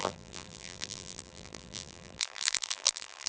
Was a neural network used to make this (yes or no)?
yes